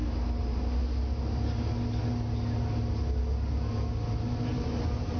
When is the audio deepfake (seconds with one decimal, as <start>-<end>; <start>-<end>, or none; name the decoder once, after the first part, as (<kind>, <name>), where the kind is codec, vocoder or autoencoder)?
none